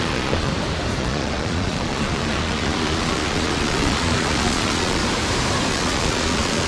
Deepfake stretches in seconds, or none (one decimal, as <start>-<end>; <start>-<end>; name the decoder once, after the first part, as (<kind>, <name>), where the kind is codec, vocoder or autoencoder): 0.0-0.5 (vocoder, Vocos); 1.0-5.0; 5.7-6.7